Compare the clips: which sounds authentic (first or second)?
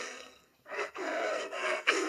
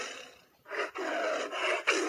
second